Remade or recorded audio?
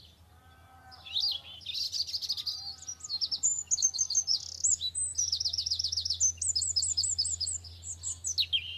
recorded